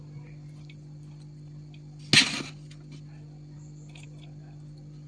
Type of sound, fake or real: real